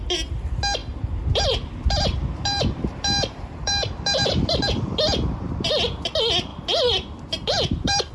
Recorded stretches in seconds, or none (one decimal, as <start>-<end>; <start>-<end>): 0.0-0.8; 5.7-6.5